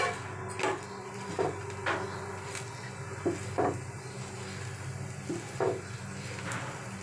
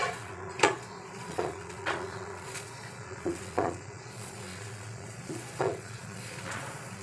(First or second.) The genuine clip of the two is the first